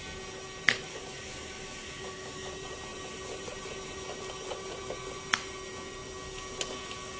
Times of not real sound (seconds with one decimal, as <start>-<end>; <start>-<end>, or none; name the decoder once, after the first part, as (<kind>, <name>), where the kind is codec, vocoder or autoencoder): 0.9-2.5 (codec, DAC)